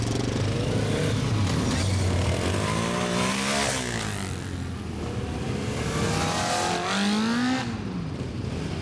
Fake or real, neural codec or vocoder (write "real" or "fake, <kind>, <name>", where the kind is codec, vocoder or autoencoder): real